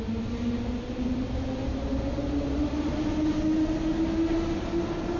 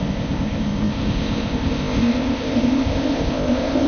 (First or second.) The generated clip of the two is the second